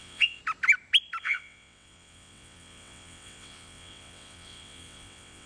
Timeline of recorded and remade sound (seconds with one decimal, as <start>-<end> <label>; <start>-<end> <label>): 0.0-0.4 remade; 0.4-1.2 recorded; 1.2-5.5 remade